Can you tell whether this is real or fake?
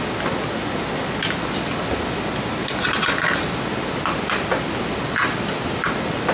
real